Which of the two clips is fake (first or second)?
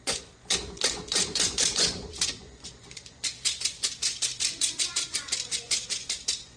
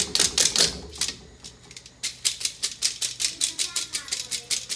first